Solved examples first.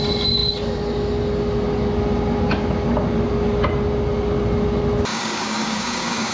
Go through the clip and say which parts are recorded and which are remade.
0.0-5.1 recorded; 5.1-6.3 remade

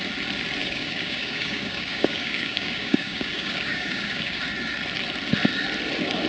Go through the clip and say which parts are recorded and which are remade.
0.0-0.6 recorded; 0.6-4.4 remade; 4.4-6.3 recorded

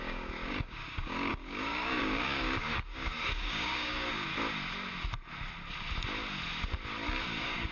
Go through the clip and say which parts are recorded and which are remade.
0.0-4.3 remade; 4.3-7.2 recorded; 7.2-7.7 remade

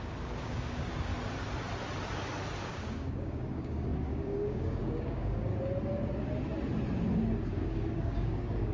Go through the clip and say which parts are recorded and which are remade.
0.0-1.1 remade; 1.1-2.6 recorded; 2.6-5.5 remade; 5.5-7.5 recorded; 7.5-8.7 remade